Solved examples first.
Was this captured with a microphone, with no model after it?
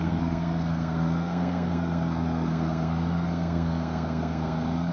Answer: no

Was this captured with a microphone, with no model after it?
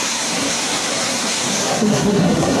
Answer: no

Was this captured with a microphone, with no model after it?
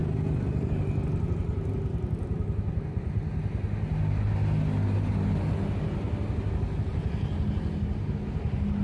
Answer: yes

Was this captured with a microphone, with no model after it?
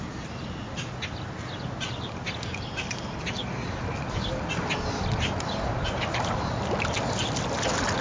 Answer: yes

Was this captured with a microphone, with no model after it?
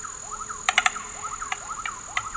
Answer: yes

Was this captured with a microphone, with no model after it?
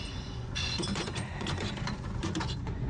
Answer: no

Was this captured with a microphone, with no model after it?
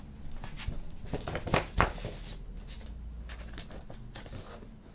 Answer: yes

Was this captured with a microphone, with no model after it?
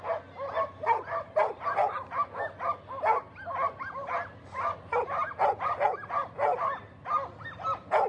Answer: yes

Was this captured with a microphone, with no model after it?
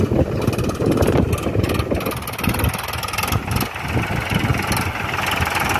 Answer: yes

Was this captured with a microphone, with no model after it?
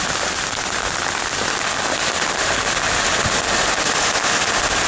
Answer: yes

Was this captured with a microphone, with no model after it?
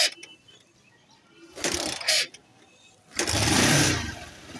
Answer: no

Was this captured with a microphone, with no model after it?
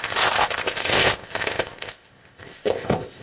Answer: no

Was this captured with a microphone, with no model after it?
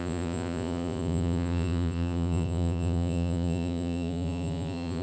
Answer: no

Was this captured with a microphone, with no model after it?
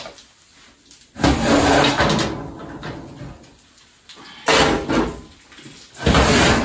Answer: yes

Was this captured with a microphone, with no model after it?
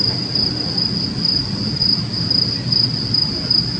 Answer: yes